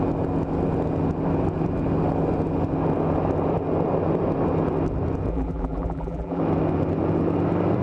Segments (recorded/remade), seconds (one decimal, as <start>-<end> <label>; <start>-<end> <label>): 0.0-5.3 recorded; 5.3-6.4 remade; 6.4-7.8 recorded